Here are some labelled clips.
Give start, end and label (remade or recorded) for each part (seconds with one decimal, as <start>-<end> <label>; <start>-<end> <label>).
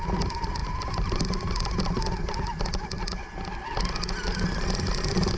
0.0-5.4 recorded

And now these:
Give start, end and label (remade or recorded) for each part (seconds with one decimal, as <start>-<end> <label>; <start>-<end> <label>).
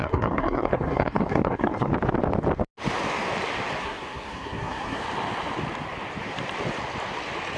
0.0-1.9 remade; 1.9-3.8 recorded; 3.8-5.0 remade; 5.0-7.6 recorded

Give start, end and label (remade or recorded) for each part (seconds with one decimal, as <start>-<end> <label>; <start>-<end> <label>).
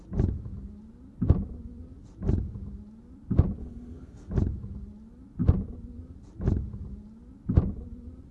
0.0-3.6 recorded; 3.6-4.3 remade; 4.3-8.3 recorded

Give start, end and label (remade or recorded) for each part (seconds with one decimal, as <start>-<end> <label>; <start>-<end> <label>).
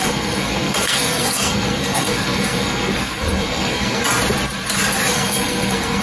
0.0-4.0 remade; 4.0-5.1 recorded; 5.1-6.0 remade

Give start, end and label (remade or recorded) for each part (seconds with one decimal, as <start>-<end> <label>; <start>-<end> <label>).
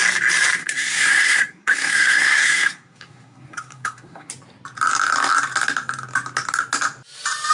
0.0-0.6 recorded; 0.6-4.3 remade; 4.3-7.5 recorded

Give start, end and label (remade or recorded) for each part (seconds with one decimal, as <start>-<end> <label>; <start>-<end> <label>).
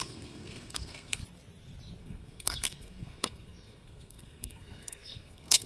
0.0-1.2 remade; 1.2-2.0 recorded; 2.0-5.7 remade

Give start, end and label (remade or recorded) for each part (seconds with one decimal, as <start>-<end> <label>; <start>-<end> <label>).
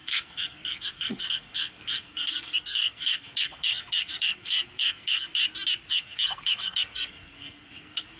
0.0-5.4 remade; 5.4-5.9 recorded; 5.9-8.2 remade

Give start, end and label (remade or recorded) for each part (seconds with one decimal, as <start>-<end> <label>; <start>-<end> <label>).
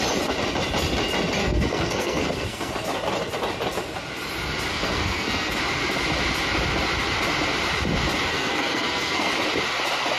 0.0-1.4 recorded; 1.4-2.7 remade; 2.7-4.7 recorded; 4.7-5.6 remade; 5.6-8.3 recorded; 8.3-9.3 remade; 9.3-10.2 recorded